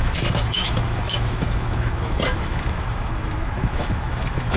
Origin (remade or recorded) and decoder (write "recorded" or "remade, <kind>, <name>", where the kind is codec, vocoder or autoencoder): remade, autoencoder, DAC-VAE